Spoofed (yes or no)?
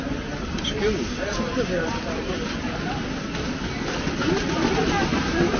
no